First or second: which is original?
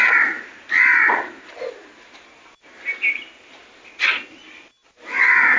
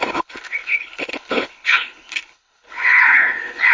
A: first